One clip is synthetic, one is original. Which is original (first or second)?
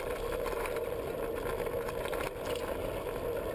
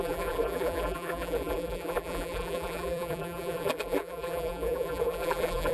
first